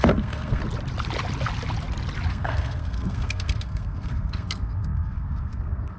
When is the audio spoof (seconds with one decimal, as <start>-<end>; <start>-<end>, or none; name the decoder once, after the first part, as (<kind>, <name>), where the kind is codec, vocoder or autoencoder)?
0.0-0.6 (codec, SNAC); 2.3-6.0